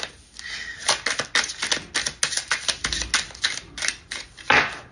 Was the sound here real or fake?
real